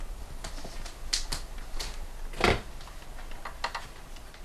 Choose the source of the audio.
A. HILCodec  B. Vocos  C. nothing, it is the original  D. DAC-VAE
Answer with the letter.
C